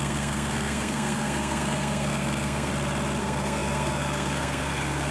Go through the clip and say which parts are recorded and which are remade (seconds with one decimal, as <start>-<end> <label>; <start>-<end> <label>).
0.0-2.7 remade; 2.7-3.2 recorded; 3.2-5.1 remade